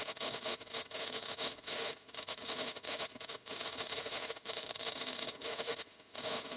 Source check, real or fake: fake